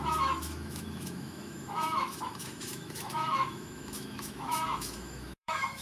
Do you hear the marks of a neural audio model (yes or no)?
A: yes